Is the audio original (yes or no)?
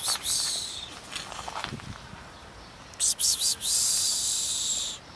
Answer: yes